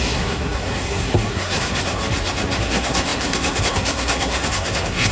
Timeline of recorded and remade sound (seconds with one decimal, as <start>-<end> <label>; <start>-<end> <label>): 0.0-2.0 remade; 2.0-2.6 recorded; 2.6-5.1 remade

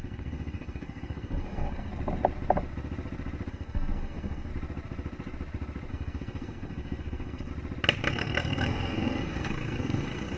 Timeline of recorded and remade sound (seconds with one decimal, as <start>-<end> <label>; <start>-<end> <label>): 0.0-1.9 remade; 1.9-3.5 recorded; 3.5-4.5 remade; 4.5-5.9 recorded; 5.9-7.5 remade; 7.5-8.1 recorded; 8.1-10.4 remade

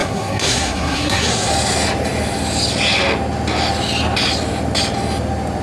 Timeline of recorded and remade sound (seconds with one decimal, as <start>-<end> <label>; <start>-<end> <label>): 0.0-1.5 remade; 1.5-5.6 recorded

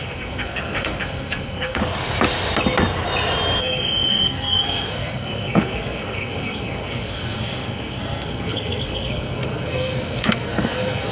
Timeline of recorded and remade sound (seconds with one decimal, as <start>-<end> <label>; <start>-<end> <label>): 0.0-1.8 remade; 1.8-3.6 recorded; 3.6-11.1 remade

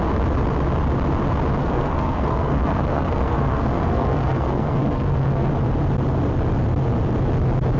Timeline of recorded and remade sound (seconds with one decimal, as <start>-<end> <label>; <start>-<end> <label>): 0.0-1.6 recorded; 1.6-5.5 remade; 5.5-7.8 recorded

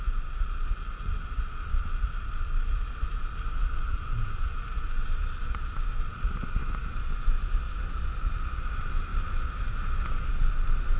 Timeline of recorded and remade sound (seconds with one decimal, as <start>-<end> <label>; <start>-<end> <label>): 0.0-11.0 recorded

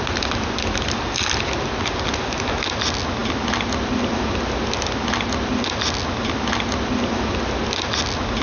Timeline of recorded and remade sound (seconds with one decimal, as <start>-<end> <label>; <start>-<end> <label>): 0.0-8.4 recorded

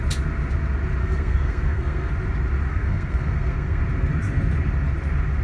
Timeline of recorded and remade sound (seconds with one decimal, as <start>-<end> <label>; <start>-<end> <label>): 0.0-1.0 recorded; 1.0-2.1 remade; 2.1-2.7 recorded; 2.7-3.8 remade; 3.8-5.4 recorded